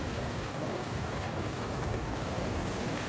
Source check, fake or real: fake